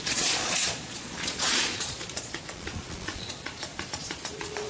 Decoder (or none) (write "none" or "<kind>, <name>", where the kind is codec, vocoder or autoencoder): vocoder, Vocos